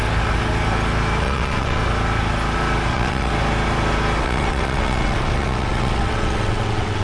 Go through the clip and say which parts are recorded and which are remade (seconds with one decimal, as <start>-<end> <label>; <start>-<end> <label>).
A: 0.0-1.2 recorded; 1.2-1.8 remade; 1.8-2.9 recorded; 2.9-3.3 remade; 3.3-4.2 recorded; 4.2-7.0 remade